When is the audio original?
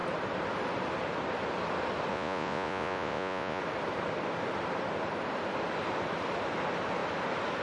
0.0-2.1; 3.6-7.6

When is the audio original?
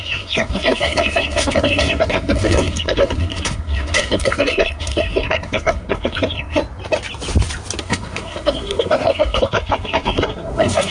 6.6-7.8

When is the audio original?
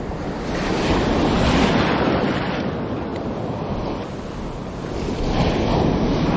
0.0-6.4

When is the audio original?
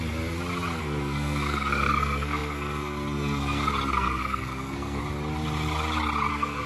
0.0-0.8; 5.0-6.3